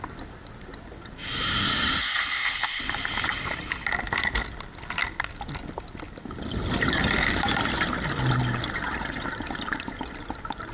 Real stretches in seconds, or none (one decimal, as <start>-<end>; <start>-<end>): 0.0-2.0; 2.8-10.7